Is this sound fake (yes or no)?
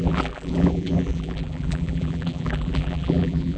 yes